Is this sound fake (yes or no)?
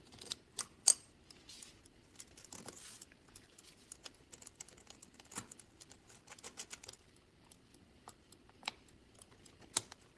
no